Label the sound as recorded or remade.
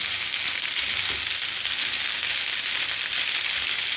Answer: recorded